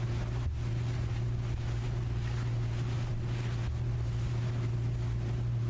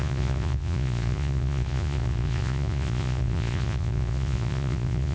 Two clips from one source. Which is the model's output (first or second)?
second